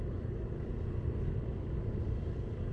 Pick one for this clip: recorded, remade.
recorded